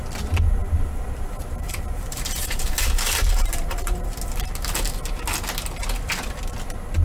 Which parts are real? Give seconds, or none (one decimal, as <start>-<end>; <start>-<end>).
0.0-0.6; 4.2-7.0